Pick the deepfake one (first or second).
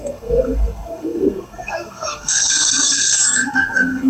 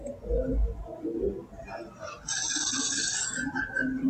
first